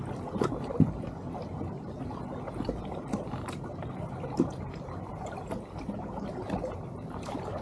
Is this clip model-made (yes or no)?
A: no